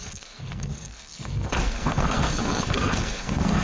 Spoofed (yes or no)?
yes